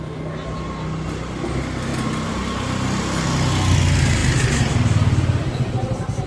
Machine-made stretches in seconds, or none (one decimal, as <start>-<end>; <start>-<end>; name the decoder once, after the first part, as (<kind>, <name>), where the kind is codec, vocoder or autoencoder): none